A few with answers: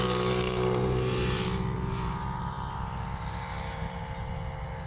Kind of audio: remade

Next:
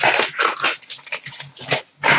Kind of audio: recorded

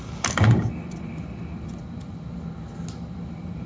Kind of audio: recorded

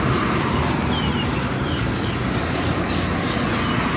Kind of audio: recorded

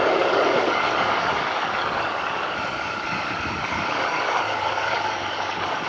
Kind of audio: remade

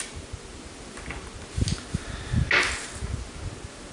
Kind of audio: recorded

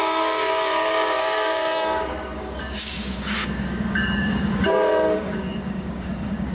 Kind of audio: remade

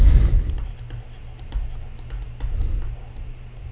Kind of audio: recorded